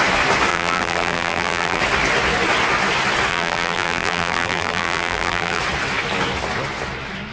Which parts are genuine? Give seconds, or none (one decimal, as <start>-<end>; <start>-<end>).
0.0-0.5; 1.8-3.3; 5.6-7.3